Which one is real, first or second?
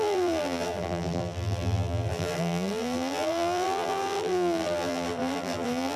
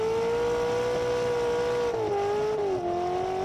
second